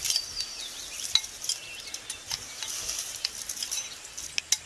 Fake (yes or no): no